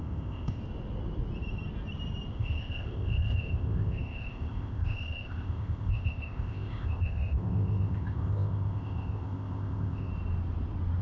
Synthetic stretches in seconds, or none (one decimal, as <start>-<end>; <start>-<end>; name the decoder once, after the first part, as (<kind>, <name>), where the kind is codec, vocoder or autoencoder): 0.0-0.6 (codec, ZipCodec); 2.3-10.1